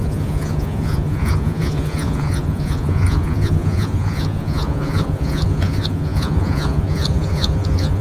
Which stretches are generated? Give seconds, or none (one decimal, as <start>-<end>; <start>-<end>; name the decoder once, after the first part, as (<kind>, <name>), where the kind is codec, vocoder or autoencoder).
0.0-8.0 (vocoder, Vocos)